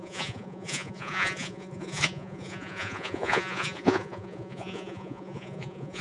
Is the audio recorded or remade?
remade